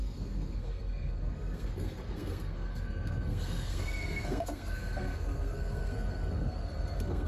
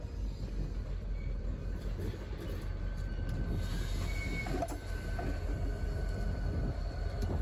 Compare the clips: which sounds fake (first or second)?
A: first